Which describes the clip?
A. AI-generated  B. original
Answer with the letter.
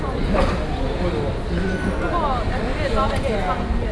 B